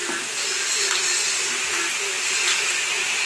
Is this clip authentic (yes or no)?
yes